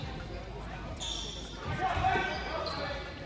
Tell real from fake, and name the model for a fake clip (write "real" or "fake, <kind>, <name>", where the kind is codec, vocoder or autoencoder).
real